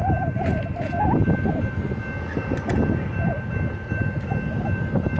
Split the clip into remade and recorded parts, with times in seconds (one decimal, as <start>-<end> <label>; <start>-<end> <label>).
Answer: 0.0-5.2 recorded